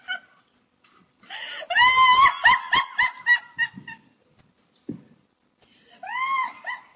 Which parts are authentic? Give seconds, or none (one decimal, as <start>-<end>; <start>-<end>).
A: 0.0-7.0